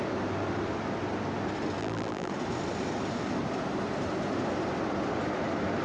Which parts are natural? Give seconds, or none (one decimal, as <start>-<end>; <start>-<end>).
0.0-1.8; 2.3-5.8